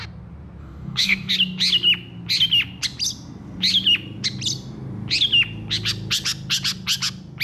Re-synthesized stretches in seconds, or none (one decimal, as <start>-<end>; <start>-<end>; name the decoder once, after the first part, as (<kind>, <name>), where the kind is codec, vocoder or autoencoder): 0.6-1.3 (codec, DAC)

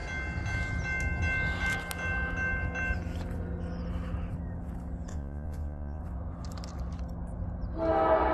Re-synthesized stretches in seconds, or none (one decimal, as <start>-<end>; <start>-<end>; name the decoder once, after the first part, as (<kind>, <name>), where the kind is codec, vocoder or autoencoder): 5.1-6.0 (vocoder, Vocos)

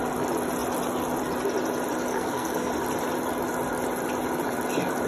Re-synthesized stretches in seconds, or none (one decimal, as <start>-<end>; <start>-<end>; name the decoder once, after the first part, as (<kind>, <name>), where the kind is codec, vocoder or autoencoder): 2.1-2.7 (codec, SNAC)

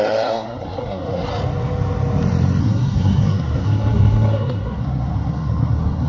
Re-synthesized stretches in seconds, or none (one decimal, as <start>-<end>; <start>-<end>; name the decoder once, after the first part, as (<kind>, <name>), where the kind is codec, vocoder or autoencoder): 0.0-1.3 (codec, SNAC); 2.6-6.1

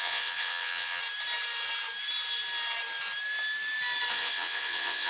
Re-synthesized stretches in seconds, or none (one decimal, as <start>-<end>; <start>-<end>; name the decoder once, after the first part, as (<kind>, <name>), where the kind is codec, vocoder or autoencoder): 0.0-1.0 (vocoder, WaveNeXt); 4.1-5.1

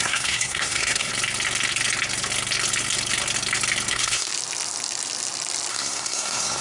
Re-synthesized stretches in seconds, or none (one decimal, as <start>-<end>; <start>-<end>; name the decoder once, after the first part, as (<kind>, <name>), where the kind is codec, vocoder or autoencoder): 0.0-1.1 (codec, SNAC); 3.9-4.3; 5.7-6.6

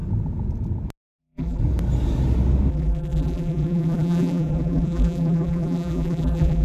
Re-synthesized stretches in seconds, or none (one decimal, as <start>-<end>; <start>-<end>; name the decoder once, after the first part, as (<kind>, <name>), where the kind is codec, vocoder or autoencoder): 1.2-1.6 (vocoder, BigVGAN v2); 2.7-6.6